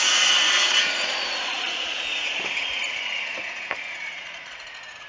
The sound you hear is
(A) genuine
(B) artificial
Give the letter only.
B